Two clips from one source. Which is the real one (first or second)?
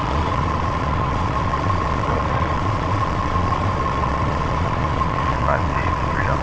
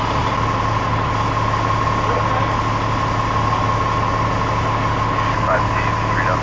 second